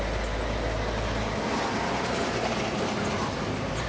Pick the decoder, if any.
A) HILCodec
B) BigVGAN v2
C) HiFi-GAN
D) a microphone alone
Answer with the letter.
D